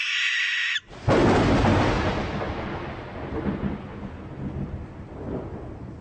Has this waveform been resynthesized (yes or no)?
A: no